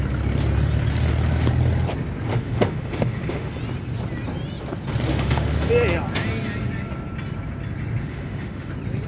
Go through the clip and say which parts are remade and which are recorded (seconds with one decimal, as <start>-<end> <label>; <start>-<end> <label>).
0.0-2.3 recorded; 2.3-3.5 remade; 3.5-5.1 recorded; 5.1-5.7 remade; 5.7-8.0 recorded; 8.0-8.7 remade; 8.7-9.1 recorded